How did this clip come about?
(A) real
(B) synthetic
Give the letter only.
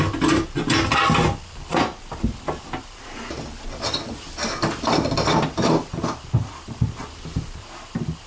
A